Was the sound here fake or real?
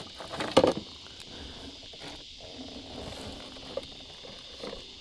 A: real